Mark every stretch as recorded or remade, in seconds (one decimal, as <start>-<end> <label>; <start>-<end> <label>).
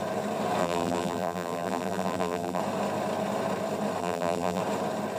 0.0-0.6 recorded; 0.6-2.6 remade; 2.6-4.0 recorded; 4.0-4.6 remade; 4.6-5.2 recorded